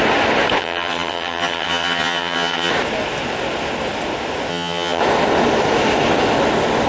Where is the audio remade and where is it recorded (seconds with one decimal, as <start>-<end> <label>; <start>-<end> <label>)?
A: 0.0-0.6 recorded; 0.6-2.7 remade; 2.7-4.5 recorded; 4.5-5.0 remade; 5.0-6.9 recorded